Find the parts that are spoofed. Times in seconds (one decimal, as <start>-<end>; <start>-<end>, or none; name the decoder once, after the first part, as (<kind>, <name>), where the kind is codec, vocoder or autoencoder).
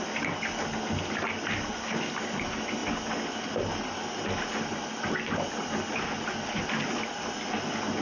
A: none